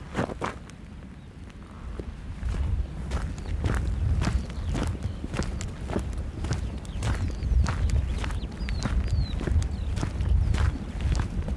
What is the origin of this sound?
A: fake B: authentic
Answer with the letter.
B